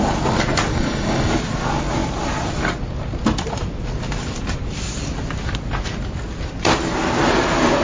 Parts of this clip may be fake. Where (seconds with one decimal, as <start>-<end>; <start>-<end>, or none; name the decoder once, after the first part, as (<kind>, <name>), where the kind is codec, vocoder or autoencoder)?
0.7-1.3 (codec, DAC)